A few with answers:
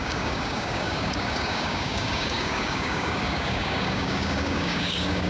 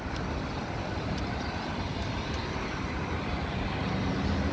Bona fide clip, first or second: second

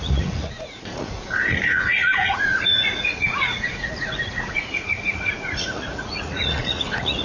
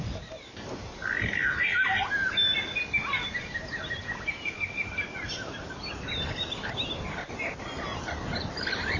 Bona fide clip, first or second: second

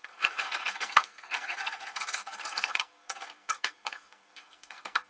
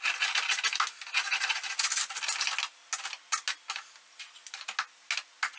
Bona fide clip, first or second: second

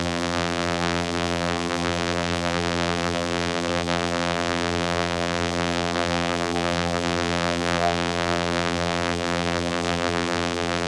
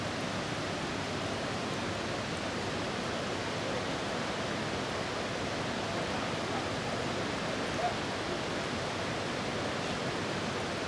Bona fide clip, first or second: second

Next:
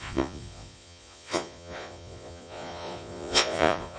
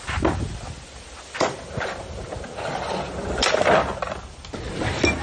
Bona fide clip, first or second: second